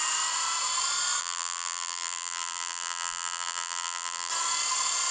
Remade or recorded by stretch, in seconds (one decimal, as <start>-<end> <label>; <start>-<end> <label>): 0.0-1.2 recorded; 1.2-4.3 remade; 4.3-5.1 recorded